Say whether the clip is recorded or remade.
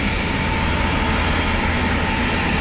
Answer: recorded